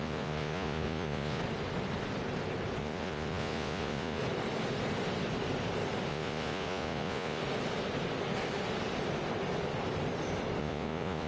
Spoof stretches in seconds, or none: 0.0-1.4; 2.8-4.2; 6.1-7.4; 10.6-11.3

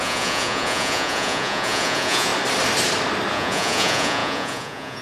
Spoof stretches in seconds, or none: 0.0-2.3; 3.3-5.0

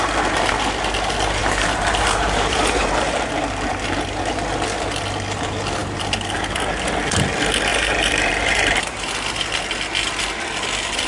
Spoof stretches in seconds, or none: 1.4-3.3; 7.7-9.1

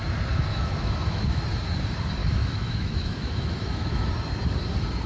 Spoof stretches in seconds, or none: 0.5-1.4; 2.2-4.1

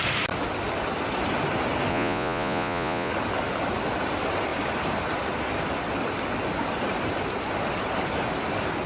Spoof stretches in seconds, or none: 1.9-3.1